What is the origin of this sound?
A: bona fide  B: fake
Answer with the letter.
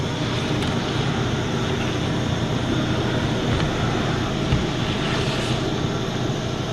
A